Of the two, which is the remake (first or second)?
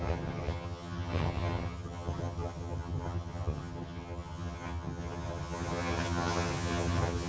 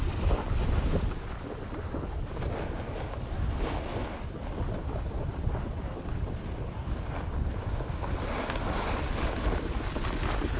first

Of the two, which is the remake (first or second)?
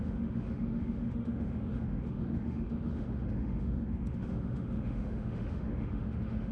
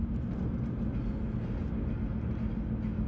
first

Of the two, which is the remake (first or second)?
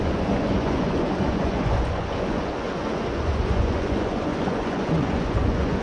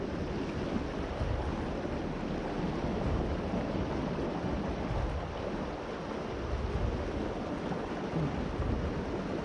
first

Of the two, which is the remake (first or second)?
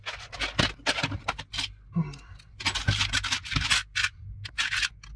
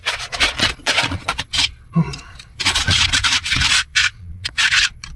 second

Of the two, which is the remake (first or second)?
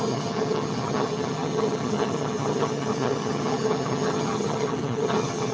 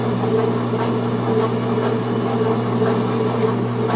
first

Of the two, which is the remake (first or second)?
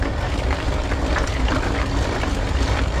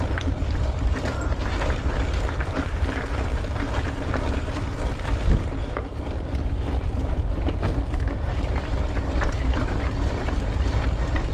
second